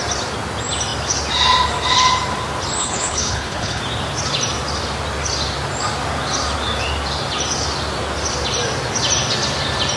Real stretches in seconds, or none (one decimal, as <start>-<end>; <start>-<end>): 0.0-2.8; 3.8-10.0